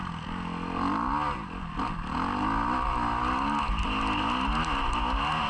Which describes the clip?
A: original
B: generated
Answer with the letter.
A